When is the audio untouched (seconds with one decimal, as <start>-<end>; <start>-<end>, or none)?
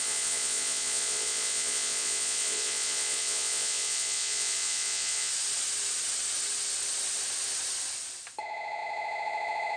5.3-8.4